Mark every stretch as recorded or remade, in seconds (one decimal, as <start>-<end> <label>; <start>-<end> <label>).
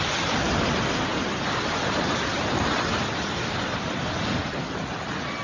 0.0-5.4 remade